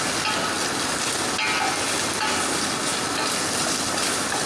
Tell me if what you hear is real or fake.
real